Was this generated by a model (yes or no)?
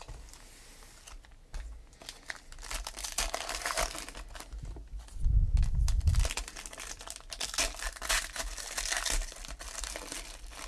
no